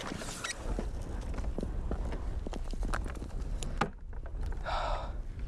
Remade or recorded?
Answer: recorded